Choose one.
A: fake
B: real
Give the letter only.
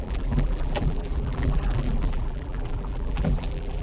A